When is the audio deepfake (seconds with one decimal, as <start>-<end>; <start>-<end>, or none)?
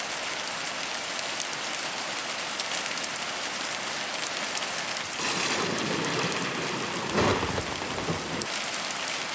none